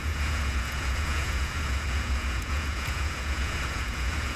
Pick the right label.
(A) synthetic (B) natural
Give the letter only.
A